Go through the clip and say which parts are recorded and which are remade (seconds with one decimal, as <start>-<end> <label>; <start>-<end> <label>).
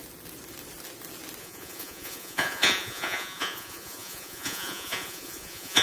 0.0-1.4 recorded; 1.4-5.8 remade